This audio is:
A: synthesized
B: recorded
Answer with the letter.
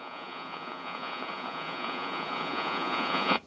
A